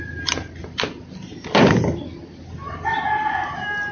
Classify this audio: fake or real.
real